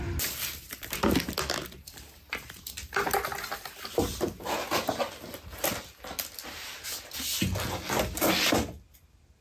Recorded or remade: recorded